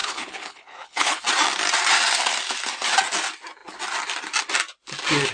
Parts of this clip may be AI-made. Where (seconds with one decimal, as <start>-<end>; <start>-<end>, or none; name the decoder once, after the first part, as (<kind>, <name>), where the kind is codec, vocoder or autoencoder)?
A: 0.0-1.2 (codec, HILCodec)